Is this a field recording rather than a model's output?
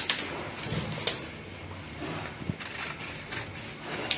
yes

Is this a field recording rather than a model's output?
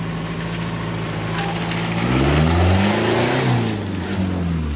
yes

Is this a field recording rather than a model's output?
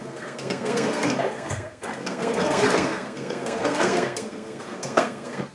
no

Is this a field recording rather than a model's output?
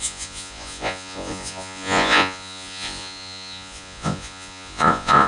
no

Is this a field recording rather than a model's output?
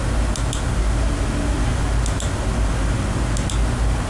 yes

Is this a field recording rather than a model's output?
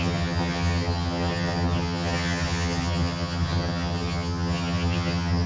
no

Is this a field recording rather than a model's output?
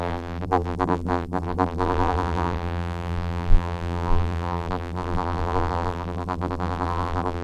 no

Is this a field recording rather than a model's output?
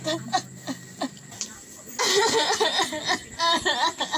yes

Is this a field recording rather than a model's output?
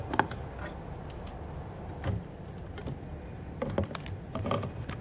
yes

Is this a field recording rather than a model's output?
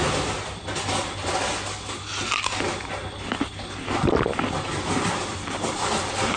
yes